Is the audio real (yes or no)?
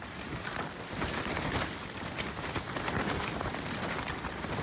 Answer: yes